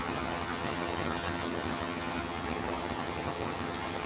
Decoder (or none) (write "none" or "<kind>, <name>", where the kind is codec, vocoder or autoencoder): vocoder, HiFi-GAN